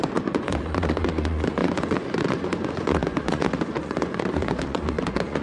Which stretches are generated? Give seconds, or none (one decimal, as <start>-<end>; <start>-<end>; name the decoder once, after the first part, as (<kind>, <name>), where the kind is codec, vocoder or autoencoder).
0.0-5.4 (vocoder, Vocos)